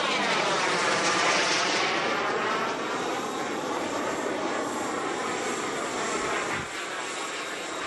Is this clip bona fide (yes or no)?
yes